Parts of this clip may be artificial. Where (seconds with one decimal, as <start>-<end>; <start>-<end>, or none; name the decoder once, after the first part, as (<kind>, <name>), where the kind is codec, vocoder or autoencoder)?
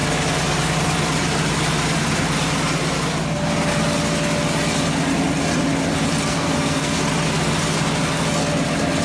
6.3-7.0 (codec, SNAC)